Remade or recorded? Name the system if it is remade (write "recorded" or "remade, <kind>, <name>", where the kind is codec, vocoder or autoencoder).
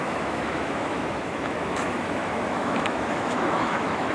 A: remade, autoencoder, DAC-VAE